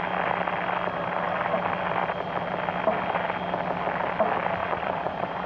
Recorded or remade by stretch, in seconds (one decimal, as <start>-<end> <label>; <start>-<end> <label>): 0.0-4.6 recorded; 4.6-5.5 remade